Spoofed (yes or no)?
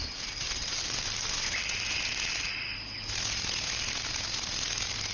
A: no